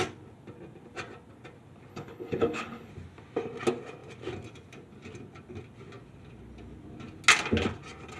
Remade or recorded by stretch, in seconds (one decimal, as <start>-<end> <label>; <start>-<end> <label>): 0.0-1.9 recorded; 1.9-2.9 remade; 2.9-8.2 recorded